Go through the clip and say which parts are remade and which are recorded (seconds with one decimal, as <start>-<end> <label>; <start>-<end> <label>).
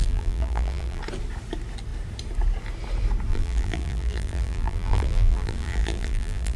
0.0-1.0 remade; 1.0-3.3 recorded; 3.3-6.6 remade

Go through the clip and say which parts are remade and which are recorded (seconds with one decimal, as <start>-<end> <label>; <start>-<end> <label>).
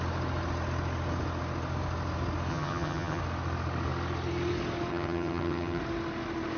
0.0-2.5 recorded; 2.5-3.2 remade; 3.2-4.9 recorded; 4.9-5.8 remade; 5.8-6.6 recorded